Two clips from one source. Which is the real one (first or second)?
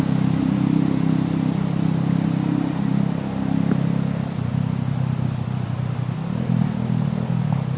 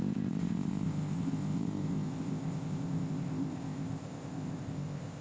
first